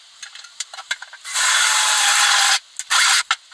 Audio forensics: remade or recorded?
recorded